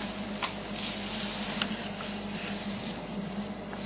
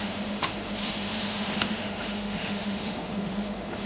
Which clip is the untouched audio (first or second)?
first